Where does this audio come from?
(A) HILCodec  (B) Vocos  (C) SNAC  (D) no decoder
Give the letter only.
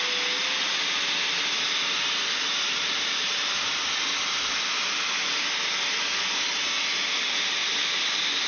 D